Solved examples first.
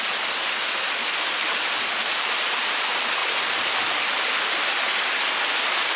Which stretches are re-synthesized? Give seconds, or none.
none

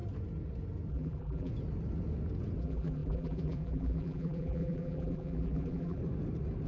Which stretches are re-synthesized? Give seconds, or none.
0.9-1.5 (vocoder, BigVGAN v2); 2.6-6.0

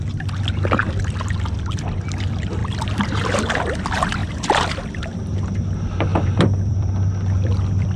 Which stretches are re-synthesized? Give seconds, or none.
2.6-3.4 (vocoder, BigVGAN v2); 4.2-4.8; 6.1-8.0

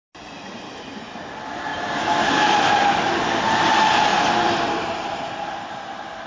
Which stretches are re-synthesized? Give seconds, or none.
4.1-4.7 (vocoder, BigVGAN v2)

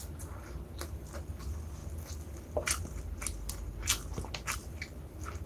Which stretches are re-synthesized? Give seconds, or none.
none

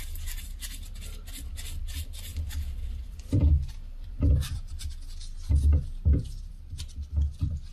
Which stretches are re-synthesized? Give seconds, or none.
2.3-4.8 (vocoder, BigVGAN v2)